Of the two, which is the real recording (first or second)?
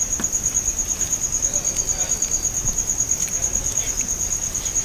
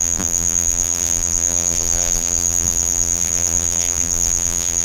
first